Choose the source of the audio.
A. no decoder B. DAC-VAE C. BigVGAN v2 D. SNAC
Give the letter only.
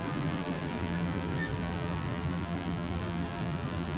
C